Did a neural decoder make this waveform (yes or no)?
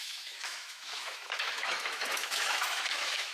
yes